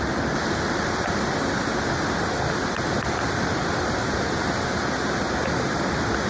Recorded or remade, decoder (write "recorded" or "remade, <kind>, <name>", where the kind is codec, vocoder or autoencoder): recorded